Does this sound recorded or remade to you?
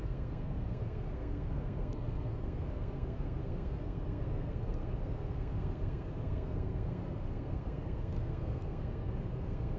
remade